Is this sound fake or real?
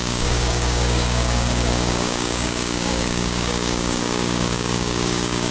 fake